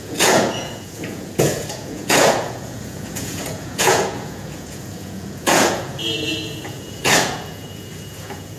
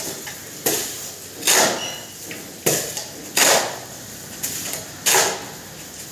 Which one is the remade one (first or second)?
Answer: first